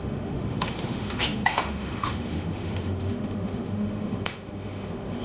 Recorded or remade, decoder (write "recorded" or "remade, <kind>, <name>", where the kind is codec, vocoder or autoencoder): remade, autoencoder, DAC-VAE